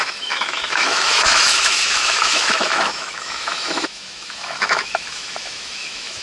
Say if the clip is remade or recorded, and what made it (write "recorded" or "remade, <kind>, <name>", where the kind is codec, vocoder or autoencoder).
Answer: remade, autoencoder, DAC-VAE